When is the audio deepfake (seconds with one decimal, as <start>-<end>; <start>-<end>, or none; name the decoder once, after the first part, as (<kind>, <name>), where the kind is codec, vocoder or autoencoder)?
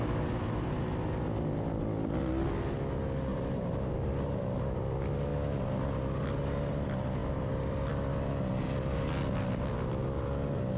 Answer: 3.3-4.4 (vocoder, BigVGAN v2)